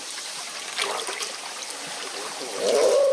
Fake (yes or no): no